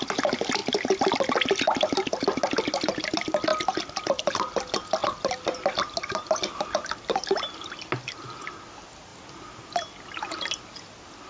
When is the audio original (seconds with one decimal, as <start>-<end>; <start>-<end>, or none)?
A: 0.0-11.3